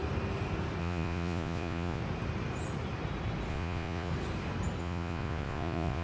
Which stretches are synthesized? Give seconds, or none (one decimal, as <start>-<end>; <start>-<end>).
0.8-2.0; 3.5-4.1; 4.8-6.0